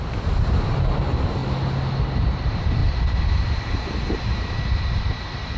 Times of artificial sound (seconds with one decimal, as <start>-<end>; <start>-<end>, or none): 0.0-1.4; 2.0-5.6